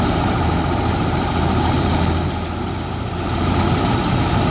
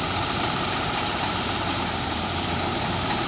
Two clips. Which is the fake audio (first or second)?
second